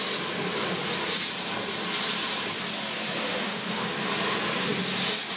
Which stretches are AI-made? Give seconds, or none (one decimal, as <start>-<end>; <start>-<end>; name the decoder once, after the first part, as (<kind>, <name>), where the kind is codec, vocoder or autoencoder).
3.2-3.9 (autoencoder, DAC-VAE)